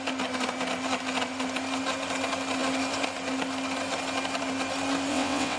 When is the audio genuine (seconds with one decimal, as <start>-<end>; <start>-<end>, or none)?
0.0-5.1